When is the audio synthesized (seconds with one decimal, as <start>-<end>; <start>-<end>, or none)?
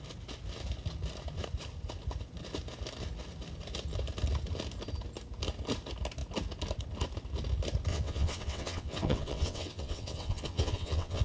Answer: 7.9-11.2